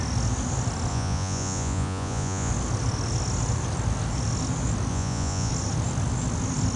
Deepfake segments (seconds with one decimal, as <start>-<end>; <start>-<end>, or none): 0.9-2.5; 4.9-5.5